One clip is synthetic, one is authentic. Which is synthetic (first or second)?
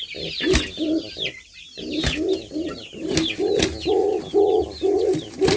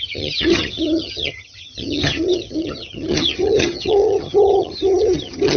second